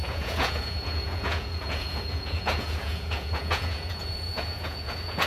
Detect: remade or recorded remade